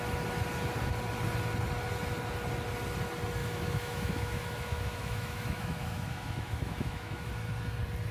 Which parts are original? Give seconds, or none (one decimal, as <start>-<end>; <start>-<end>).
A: 0.0-3.4; 7.3-8.1